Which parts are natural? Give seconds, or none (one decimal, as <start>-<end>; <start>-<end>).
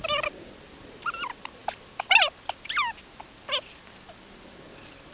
0.0-5.1